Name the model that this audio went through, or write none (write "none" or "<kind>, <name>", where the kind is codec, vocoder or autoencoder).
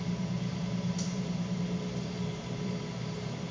vocoder, BigVGAN v2